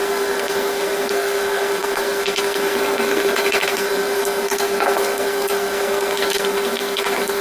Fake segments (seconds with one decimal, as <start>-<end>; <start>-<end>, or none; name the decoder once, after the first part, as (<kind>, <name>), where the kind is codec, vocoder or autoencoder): 0.0-7.4 (codec, SNAC)